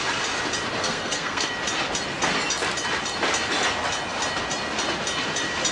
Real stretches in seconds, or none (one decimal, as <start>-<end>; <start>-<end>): 0.0-0.8; 1.5-5.7